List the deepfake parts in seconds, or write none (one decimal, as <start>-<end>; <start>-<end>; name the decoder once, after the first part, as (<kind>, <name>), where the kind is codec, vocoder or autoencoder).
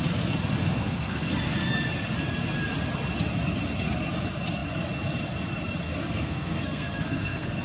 0.6-1.3 (codec, SNAC); 6.0-7.6